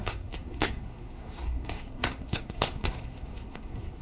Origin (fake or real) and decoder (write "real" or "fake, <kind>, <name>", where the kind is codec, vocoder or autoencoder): fake, codec, SNAC